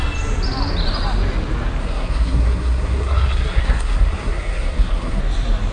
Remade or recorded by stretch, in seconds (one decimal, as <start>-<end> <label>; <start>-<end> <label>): 0.0-1.8 recorded; 1.8-5.2 remade; 5.2-5.7 recorded